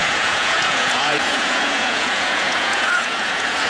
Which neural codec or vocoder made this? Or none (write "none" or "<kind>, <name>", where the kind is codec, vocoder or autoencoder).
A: vocoder, Vocos